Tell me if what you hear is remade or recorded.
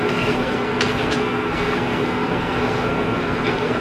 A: remade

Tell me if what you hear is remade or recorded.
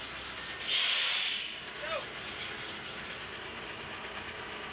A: recorded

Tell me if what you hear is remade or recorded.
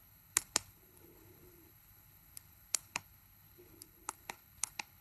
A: remade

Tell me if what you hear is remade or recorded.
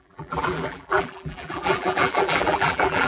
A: remade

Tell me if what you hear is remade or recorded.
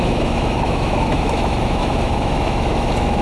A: remade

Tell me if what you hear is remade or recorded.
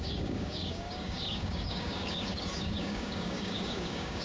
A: remade